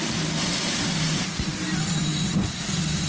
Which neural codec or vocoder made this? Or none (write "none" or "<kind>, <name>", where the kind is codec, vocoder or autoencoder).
none